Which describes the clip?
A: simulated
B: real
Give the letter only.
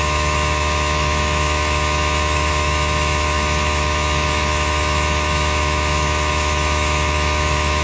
A